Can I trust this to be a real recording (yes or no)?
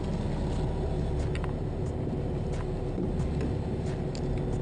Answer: yes